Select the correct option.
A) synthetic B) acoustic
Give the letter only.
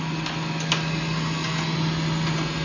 B